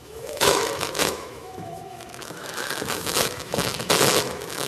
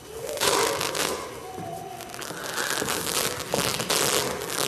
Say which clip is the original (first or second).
second